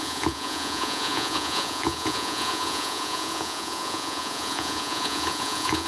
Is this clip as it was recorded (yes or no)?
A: no